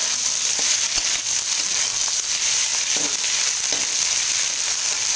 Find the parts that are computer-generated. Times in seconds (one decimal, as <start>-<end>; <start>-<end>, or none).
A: 0.0-0.6; 2.7-3.3